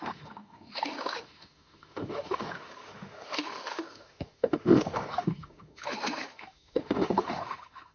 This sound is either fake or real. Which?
fake